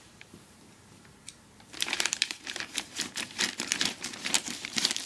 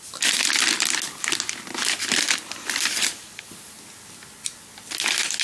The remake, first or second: first